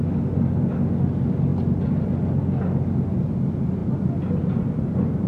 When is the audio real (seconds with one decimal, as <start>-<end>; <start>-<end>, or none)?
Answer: 0.0-5.3